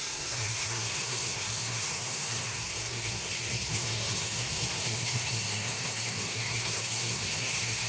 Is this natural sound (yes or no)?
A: no